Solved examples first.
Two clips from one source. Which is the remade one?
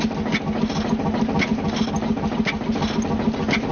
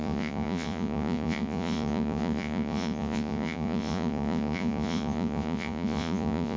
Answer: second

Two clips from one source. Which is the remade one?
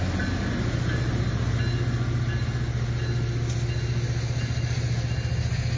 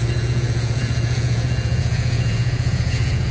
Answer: second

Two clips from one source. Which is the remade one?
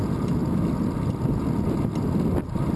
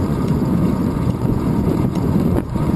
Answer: second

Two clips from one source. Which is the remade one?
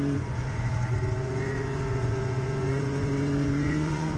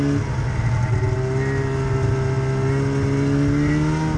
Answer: first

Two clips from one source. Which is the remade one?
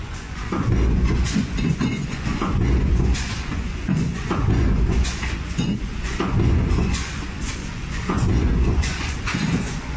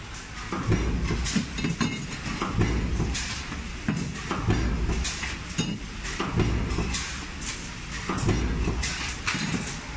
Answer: first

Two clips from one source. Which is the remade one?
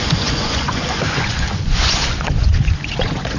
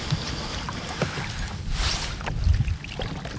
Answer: first